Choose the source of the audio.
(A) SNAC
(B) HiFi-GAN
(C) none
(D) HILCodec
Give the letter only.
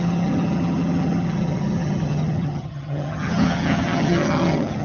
B